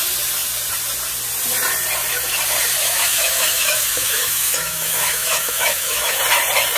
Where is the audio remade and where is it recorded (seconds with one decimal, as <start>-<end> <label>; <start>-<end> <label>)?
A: 0.0-2.8 recorded; 2.8-6.2 remade; 6.2-6.8 recorded